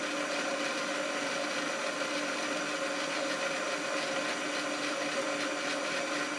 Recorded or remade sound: recorded